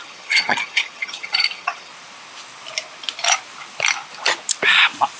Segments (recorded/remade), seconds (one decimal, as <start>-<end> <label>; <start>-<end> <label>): 0.0-1.9 remade; 1.9-5.2 recorded